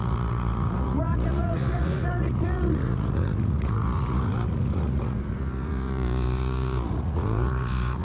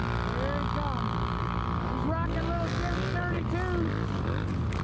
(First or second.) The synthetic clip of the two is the first